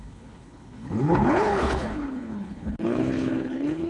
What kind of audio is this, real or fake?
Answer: fake